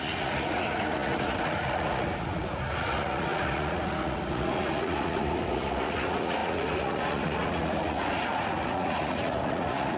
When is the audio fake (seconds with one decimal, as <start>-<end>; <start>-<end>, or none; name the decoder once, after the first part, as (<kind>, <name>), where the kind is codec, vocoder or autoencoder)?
0.0-10.0 (vocoder, Vocos)